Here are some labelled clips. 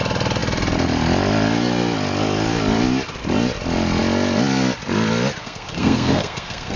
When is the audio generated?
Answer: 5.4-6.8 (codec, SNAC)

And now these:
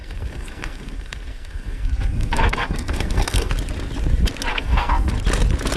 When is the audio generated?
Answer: 0.0-3.5 (codec, SNAC); 4.5-5.1

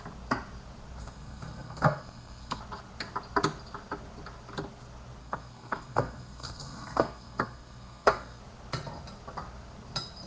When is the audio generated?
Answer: 1.0-2.6 (codec, SNAC); 5.2-8.4

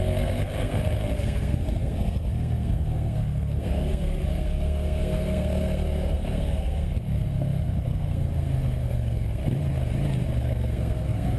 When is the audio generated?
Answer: 0.0-9.4 (codec, SNAC); 10.4-11.4